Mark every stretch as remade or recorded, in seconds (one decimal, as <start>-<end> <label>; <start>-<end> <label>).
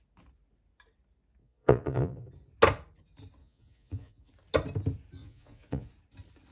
0.0-1.4 recorded; 1.4-2.3 remade; 2.3-3.4 recorded; 3.4-4.3 remade; 4.3-5.2 recorded; 5.2-5.9 remade; 5.9-6.5 recorded